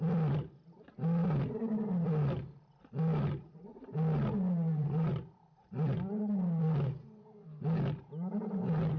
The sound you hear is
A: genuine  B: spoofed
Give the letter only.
A